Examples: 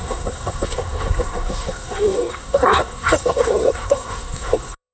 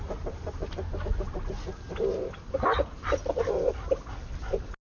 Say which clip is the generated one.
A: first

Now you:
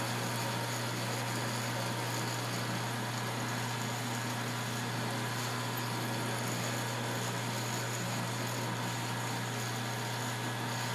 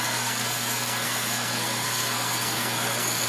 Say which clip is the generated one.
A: second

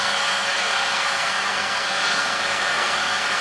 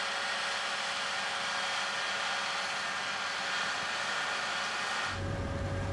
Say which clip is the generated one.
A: first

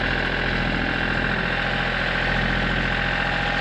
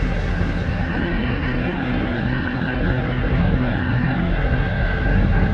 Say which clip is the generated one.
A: second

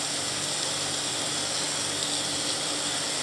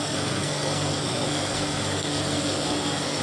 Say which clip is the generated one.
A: second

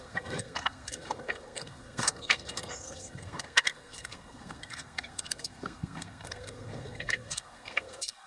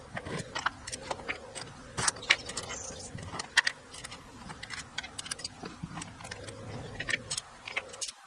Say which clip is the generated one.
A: first